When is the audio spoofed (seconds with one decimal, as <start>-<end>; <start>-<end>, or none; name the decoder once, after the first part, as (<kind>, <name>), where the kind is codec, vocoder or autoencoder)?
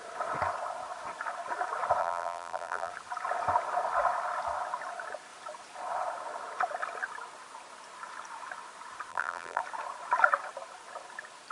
2.0-2.9 (vocoder, BigVGAN v2); 9.1-9.6